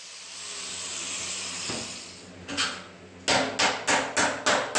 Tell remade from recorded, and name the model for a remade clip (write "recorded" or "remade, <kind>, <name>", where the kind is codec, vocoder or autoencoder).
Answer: recorded